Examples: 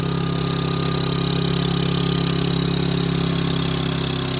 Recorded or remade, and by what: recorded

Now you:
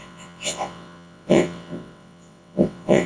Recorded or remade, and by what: remade, vocoder, WaveNeXt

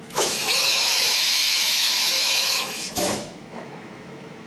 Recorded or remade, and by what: remade, autoencoder, DAC-VAE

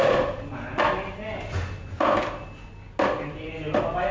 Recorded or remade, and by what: recorded